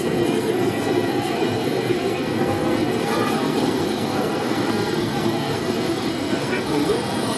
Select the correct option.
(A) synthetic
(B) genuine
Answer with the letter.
A